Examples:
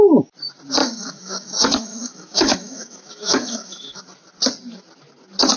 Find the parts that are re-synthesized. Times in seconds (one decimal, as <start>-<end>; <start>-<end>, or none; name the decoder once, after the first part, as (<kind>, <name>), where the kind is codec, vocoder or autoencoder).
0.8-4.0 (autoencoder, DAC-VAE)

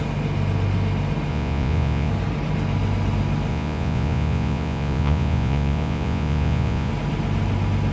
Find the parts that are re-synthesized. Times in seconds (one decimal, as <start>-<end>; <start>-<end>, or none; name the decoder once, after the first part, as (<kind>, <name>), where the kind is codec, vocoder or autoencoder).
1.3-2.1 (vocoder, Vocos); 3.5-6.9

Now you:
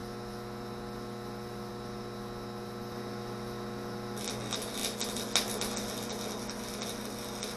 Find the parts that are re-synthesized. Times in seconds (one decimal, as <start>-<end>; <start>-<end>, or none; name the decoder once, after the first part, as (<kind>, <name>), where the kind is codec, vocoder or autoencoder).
none

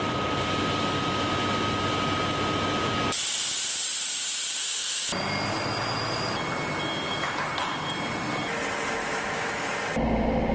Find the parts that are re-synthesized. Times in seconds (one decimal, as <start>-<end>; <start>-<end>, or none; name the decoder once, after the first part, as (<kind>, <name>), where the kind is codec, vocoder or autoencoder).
4.6-5.1 (autoencoder, DAC-VAE); 9.0-9.7

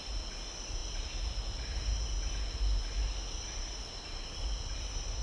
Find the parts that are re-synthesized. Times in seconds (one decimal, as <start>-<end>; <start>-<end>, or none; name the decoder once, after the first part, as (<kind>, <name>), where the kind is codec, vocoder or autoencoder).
none

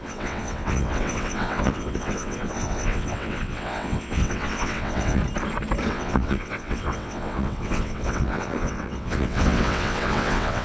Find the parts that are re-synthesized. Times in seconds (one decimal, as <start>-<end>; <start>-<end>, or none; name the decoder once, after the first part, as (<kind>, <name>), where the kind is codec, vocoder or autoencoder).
0.0-5.2 (vocoder, WaveNeXt); 5.9-10.6